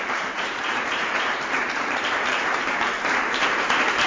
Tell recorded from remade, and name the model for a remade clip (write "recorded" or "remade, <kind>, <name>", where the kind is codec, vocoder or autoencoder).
remade, vocoder, BigVGAN v2